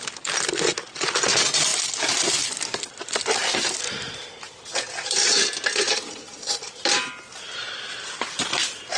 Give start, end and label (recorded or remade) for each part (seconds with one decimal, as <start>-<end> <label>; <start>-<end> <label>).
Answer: 0.0-9.0 recorded